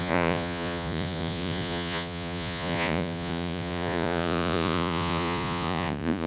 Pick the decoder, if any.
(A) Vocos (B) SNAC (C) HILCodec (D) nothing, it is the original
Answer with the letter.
A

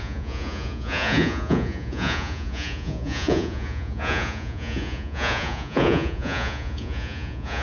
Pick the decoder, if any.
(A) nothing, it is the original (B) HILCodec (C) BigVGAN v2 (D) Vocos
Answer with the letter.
D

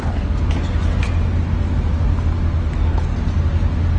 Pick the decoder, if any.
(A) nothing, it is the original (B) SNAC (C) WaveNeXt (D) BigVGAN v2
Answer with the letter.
A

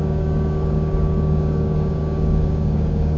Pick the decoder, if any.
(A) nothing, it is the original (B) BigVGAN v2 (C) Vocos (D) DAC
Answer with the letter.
D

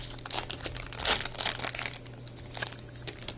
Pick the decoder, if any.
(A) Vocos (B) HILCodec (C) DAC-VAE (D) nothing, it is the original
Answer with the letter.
D